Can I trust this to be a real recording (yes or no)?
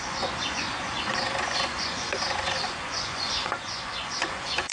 no